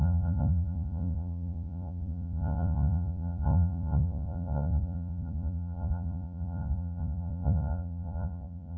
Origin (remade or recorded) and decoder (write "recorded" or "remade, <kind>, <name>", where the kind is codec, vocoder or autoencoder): remade, vocoder, Vocos